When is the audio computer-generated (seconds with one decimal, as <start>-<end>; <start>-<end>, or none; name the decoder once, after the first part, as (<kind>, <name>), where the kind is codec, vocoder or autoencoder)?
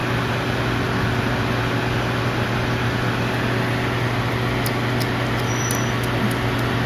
none